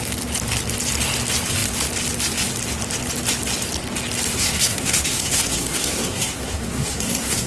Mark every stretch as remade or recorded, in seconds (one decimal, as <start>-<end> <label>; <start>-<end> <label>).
0.0-4.3 recorded; 4.3-7.5 remade